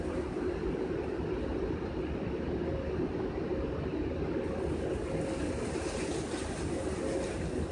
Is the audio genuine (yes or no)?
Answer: yes